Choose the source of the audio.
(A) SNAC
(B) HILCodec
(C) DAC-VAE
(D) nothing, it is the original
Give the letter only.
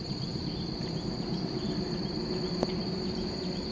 D